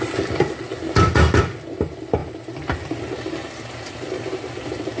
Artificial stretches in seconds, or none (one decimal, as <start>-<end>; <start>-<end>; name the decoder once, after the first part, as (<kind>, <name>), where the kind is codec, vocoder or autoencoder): none